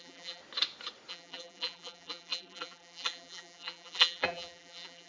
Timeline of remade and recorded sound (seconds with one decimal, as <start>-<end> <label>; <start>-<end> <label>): 0.0-0.4 remade; 0.4-1.1 recorded; 1.1-5.1 remade